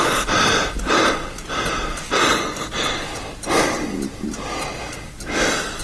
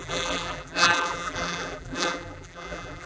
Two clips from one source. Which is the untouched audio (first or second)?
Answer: first